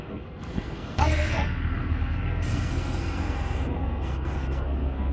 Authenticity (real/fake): fake